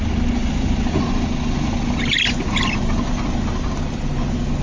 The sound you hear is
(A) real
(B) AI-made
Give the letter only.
A